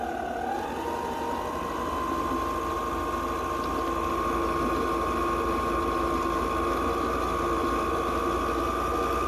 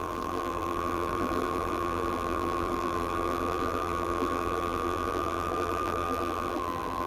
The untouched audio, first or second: first